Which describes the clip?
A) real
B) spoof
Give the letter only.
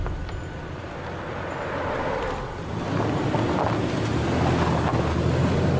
A